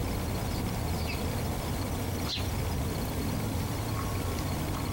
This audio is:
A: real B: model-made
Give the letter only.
A